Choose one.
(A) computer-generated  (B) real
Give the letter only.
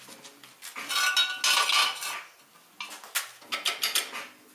B